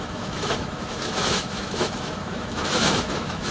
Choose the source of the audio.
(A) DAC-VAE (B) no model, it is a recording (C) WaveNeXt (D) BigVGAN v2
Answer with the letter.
A